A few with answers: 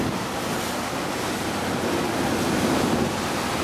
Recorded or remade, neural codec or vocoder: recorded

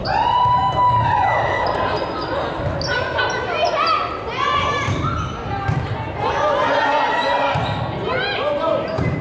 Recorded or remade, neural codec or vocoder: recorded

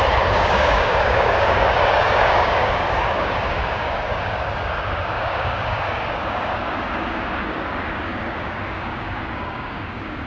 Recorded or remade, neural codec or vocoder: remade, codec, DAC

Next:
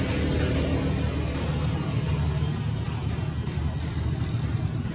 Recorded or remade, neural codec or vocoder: recorded